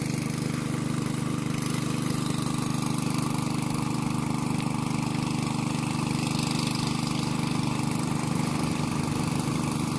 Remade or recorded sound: recorded